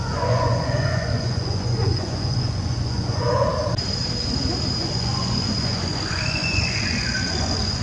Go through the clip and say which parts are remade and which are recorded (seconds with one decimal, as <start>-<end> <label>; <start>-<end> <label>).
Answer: 0.0-3.5 remade; 3.5-4.8 recorded; 4.8-7.8 remade